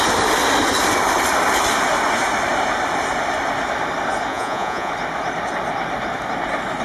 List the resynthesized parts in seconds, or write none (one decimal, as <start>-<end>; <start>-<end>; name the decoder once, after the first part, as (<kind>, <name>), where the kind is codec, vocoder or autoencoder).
4.3-4.9 (vocoder, Vocos)